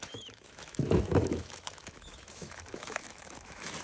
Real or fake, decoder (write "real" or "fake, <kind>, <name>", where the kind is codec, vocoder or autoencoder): fake, autoencoder, DAC-VAE